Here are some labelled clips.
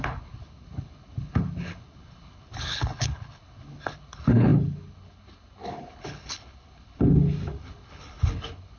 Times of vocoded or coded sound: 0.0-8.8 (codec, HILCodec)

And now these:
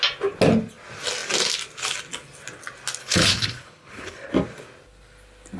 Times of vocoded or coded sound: 3.0-4.3 (codec, HILCodec)

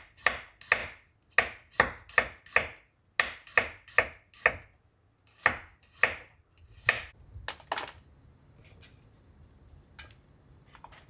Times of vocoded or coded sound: none

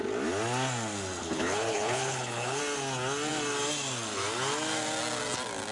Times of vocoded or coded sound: 1.2-2.6 (codec, HILCodec)

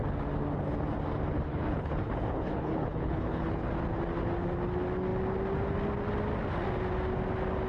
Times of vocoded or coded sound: 1.5-3.7 (codec, HILCodec)

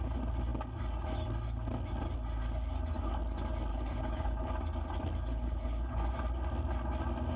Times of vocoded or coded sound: 3.7-4.5 (codec, HILCodec); 5.3-6.1

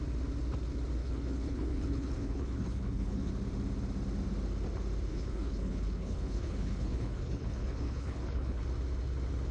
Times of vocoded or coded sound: 1.0-3.3 (codec, HILCodec); 5.1-8.6

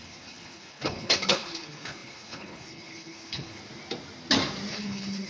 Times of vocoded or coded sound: 0.0-3.6 (codec, HILCodec); 4.7-5.3